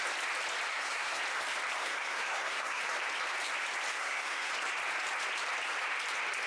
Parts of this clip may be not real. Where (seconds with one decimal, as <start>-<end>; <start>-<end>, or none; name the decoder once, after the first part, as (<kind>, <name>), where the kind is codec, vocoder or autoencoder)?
0.7-1.2 (codec, SNAC); 1.8-2.8; 3.9-4.5